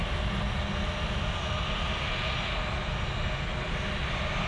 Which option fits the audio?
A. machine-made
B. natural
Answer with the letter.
B